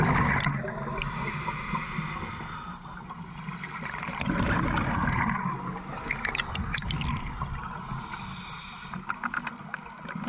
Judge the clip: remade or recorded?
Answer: recorded